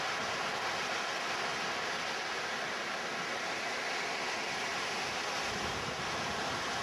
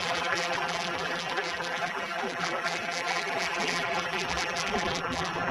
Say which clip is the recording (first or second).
first